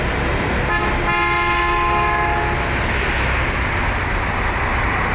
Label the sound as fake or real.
real